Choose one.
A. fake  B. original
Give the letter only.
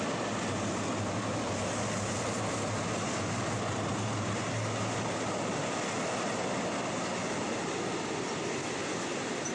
B